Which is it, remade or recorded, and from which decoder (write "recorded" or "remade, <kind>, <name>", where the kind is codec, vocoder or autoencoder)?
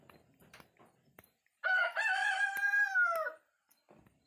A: recorded